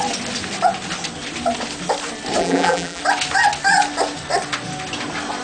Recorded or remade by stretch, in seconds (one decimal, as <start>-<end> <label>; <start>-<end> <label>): 0.0-2.4 recorded; 2.4-3.0 remade; 3.0-5.4 recorded